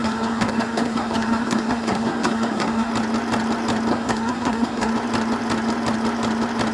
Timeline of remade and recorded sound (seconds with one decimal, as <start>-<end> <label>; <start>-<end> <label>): 0.0-2.9 remade; 2.9-3.9 recorded; 3.9-4.9 remade; 4.9-6.7 recorded